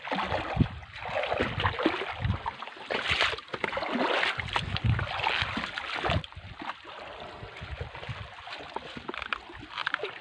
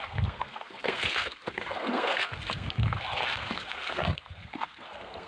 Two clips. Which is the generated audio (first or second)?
second